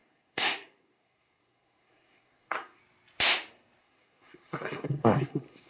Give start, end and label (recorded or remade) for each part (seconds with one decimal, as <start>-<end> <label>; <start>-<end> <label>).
0.0-2.8 remade; 2.8-3.8 recorded; 3.8-5.7 remade